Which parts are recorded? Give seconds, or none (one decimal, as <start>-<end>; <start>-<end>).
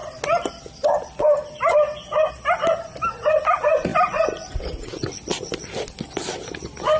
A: 0.0-7.0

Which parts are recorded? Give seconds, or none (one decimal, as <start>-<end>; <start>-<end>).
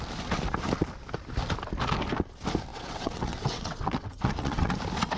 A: 0.0-2.7; 4.7-5.2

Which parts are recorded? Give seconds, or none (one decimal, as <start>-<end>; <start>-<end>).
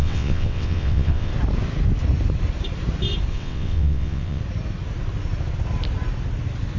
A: 1.3-3.3; 4.4-6.8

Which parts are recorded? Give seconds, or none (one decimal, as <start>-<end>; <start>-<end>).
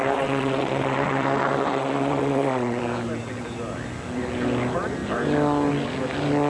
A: 2.8-6.5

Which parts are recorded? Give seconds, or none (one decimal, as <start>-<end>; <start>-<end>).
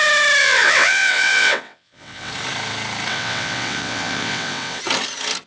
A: 0.0-0.4; 2.3-3.1; 4.8-5.5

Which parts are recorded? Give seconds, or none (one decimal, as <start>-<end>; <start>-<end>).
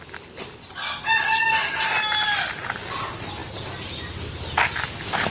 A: 0.0-5.3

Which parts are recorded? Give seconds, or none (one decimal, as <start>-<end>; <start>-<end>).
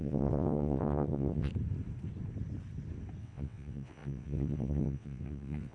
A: 1.5-3.2